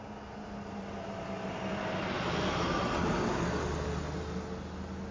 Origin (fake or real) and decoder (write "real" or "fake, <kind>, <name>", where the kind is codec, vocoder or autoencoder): real